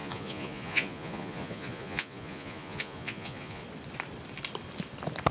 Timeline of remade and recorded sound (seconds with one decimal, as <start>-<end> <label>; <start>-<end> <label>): 0.0-3.6 remade; 3.6-5.3 recorded